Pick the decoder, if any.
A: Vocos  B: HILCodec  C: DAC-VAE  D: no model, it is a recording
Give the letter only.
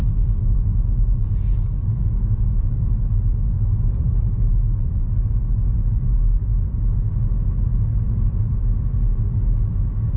D